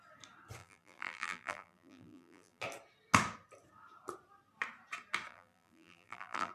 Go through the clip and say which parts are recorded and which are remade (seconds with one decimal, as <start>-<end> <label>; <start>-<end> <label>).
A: 0.0-0.6 recorded; 0.6-2.6 remade; 2.6-5.3 recorded; 5.3-6.5 remade